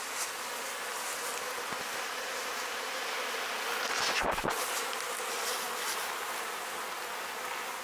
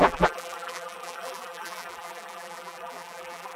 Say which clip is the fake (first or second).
second